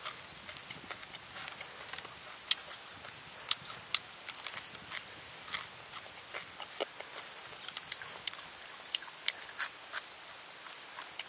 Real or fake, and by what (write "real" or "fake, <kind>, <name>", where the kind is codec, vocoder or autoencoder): real